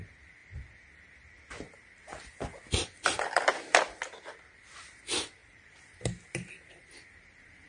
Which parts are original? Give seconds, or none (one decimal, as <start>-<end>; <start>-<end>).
0.0-7.7